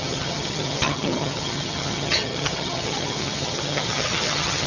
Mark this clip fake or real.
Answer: fake